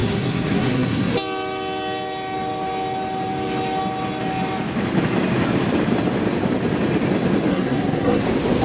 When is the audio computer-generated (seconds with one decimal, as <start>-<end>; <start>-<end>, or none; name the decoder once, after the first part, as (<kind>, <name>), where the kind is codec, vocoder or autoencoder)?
0.0-1.1 (codec, SNAC); 7.5-8.2